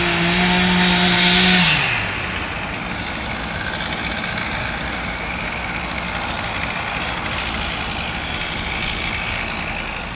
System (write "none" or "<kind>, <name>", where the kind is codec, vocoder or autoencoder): none